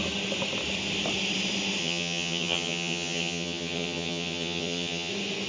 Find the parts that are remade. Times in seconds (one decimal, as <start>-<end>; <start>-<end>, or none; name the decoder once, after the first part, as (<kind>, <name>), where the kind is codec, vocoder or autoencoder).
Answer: 1.8-5.1 (vocoder, HiFi-GAN)